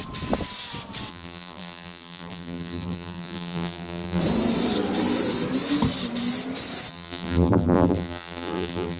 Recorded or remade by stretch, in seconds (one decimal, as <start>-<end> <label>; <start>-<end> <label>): 0.0-1.1 recorded; 1.1-4.2 remade; 4.2-6.9 recorded; 6.9-9.0 remade